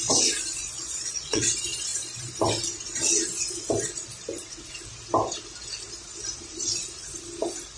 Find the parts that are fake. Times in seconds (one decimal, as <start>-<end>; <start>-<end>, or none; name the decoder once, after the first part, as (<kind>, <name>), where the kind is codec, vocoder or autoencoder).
0.6-1.4 (vocoder, Vocos)

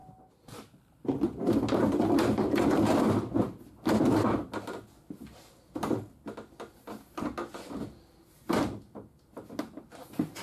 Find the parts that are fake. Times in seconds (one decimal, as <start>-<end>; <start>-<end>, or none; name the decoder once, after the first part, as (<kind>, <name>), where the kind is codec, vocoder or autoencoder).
none

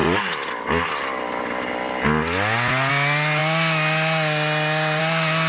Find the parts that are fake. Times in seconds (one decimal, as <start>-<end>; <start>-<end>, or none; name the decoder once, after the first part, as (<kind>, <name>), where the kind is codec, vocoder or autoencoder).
none